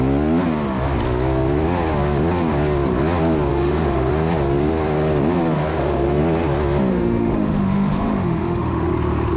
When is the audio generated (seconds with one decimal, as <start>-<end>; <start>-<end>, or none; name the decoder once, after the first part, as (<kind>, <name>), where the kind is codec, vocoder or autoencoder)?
3.5-4.1 (autoencoder, DAC-VAE); 5.7-6.2; 6.9-8.9